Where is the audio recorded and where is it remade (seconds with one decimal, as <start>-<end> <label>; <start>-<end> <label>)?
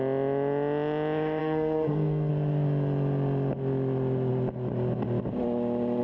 0.0-1.4 recorded; 1.4-2.3 remade; 2.3-6.0 recorded